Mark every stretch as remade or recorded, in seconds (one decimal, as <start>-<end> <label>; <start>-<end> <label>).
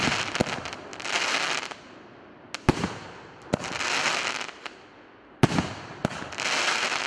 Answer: 0.0-7.1 recorded